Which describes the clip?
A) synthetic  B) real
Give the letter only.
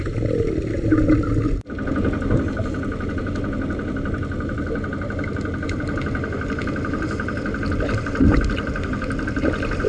B